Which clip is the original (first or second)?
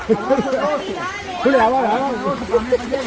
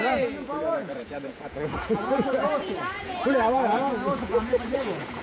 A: first